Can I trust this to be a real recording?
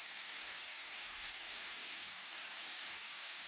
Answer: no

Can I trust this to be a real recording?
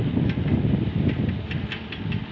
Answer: yes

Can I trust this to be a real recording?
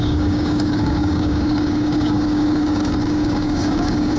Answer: no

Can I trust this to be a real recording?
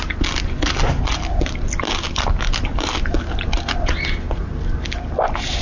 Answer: yes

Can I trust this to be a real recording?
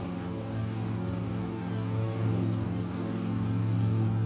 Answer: no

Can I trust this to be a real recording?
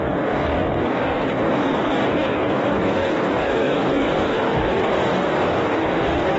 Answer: no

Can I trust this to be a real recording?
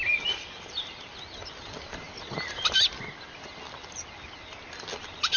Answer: yes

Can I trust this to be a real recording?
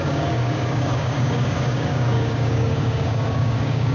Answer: no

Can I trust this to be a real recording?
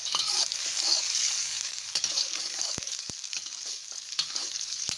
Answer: no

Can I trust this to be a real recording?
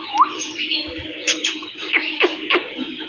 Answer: no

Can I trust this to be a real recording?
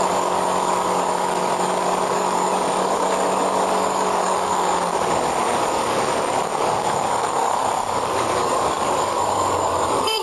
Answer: no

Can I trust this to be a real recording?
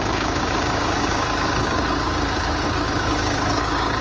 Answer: no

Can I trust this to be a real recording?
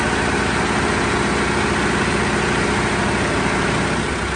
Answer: yes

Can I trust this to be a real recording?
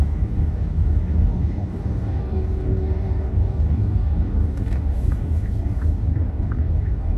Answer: no